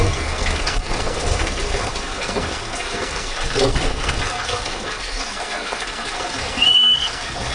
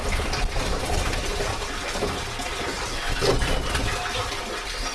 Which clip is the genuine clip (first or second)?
second